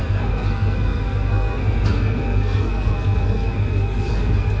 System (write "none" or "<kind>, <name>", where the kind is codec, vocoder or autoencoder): codec, SNAC